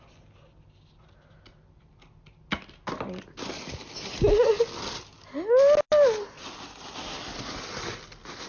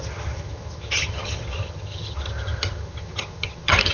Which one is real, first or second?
first